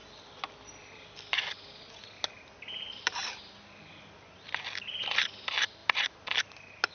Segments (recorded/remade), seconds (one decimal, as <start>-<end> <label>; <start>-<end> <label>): 0.0-6.9 recorded